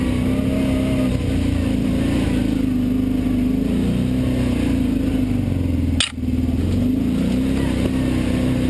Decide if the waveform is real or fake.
real